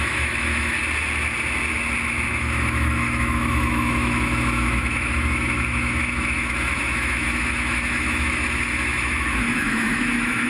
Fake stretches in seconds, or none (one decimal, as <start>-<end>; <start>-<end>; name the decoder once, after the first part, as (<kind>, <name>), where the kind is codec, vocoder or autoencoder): 0.0-0.8 (autoencoder, DAC-VAE); 2.3-10.5